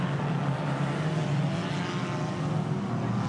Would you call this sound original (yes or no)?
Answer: yes